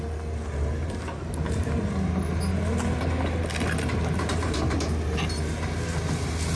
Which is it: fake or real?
real